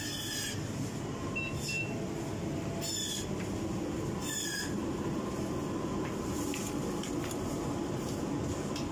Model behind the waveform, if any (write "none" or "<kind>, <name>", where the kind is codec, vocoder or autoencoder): none